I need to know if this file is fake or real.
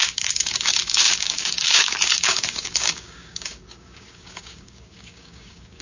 fake